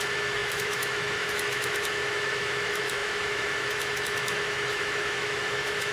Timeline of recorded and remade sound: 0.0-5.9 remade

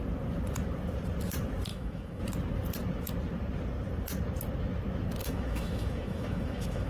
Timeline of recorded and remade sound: 0.0-1.7 recorded; 1.7-2.2 remade; 2.2-5.2 recorded; 5.2-6.9 remade

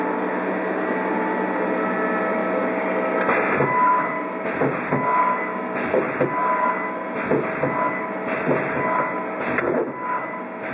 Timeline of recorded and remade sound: 0.0-10.7 recorded

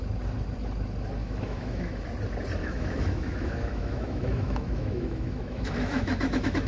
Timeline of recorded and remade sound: 0.0-1.2 recorded; 1.2-2.0 remade; 2.0-2.6 recorded; 2.6-6.7 remade